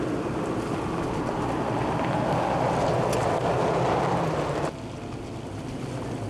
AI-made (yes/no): no